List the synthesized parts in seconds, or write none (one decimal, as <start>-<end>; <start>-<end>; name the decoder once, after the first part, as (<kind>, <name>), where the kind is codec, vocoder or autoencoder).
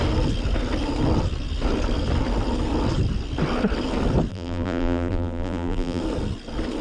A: 4.3-6.0 (vocoder, BigVGAN v2)